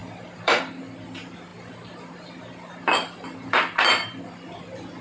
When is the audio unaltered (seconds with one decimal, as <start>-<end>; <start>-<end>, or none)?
0.8-1.5; 4.2-5.0